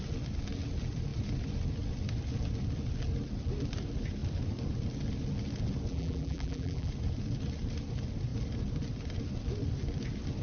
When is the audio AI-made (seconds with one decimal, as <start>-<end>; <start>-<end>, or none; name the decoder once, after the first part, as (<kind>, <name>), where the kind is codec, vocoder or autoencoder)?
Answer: 5.9-6.9 (vocoder, BigVGAN v2)